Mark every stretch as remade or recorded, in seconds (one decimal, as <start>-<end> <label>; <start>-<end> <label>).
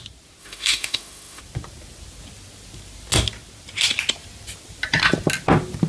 0.0-0.4 recorded; 0.4-1.4 remade; 1.4-5.9 recorded